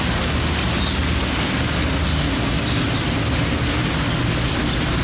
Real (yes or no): yes